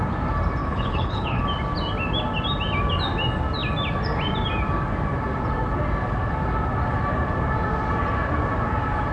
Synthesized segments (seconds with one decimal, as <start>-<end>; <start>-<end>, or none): 0.6-1.4